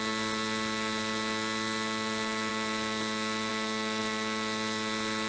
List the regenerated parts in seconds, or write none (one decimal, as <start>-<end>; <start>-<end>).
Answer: none